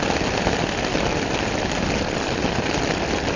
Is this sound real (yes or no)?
yes